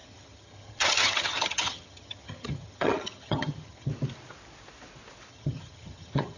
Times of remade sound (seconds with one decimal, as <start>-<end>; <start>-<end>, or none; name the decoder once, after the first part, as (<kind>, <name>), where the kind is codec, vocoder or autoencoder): 0.0-3.9 (vocoder, HiFi-GAN); 5.3-6.4